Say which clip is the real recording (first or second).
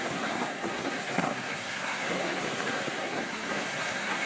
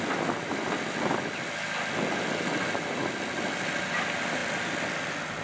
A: second